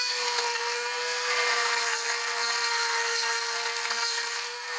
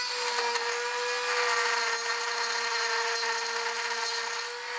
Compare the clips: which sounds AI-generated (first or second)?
first